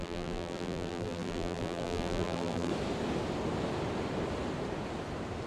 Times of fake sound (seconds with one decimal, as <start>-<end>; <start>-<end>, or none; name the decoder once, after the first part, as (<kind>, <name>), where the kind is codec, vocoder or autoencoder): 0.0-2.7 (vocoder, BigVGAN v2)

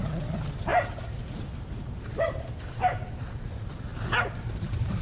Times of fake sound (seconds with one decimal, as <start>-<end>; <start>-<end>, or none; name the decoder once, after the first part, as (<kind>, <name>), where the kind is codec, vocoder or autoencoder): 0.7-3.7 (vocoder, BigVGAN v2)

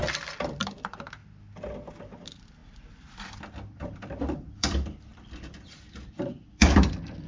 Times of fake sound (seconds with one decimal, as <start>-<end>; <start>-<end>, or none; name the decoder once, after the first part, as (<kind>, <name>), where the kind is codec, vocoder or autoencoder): 0.0-1.2 (vocoder, BigVGAN v2); 1.9-7.3

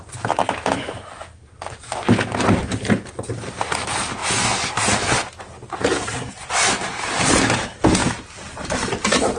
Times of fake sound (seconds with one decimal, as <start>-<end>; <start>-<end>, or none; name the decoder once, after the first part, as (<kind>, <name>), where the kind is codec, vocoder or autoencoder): 0.0-4.2 (vocoder, BigVGAN v2); 5.4-8.0; 8.5-9.4

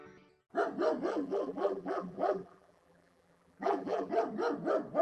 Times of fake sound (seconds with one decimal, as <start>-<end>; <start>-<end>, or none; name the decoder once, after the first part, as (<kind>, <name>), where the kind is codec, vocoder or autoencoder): 1.1-4.1 (vocoder, BigVGAN v2)

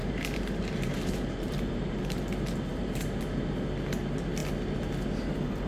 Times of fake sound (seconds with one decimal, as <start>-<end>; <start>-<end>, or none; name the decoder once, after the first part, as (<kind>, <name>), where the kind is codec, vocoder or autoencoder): 0.0-2.2 (vocoder, BigVGAN v2); 2.7-3.2

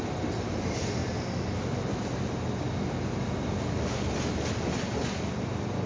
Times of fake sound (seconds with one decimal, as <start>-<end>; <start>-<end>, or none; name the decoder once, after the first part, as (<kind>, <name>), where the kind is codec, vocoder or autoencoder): none

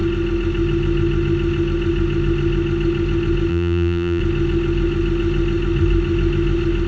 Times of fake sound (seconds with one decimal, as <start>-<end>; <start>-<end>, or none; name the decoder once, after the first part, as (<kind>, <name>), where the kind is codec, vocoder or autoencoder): 3.5-4.2 (vocoder, BigVGAN v2)